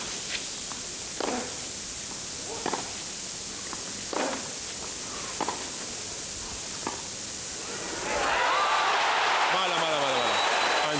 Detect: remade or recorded recorded